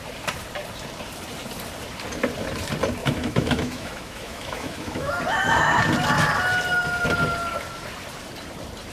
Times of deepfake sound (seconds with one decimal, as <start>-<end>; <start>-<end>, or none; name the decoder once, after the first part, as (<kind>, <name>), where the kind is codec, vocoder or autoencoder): 3.0-5.2 (autoencoder, DAC-VAE)